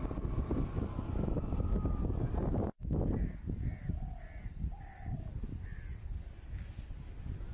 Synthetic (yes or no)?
no